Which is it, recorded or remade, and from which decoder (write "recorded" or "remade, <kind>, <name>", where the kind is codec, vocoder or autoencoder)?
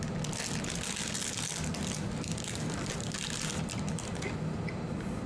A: recorded